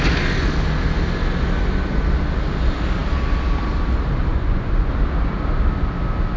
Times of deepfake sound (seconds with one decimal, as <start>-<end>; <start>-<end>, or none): 4.3-4.9